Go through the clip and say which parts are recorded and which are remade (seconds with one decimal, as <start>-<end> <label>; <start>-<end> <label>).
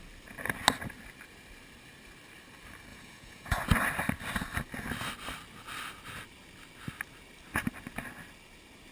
0.0-2.9 recorded; 2.9-3.6 remade; 3.6-8.9 recorded